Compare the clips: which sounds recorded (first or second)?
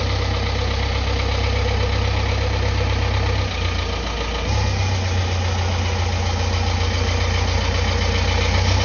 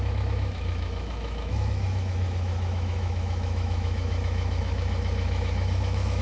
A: first